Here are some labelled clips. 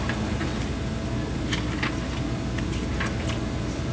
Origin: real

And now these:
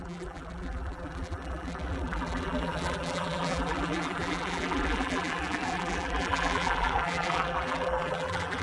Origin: fake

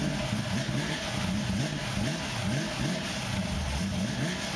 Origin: real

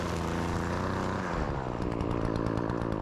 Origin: real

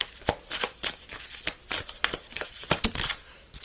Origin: fake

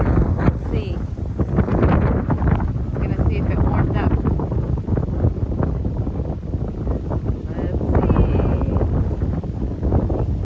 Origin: real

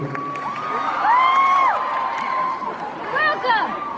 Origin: fake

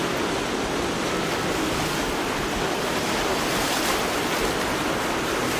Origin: real